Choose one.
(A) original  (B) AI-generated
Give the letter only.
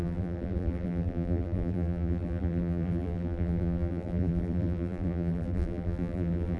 B